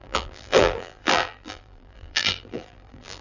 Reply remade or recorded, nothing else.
remade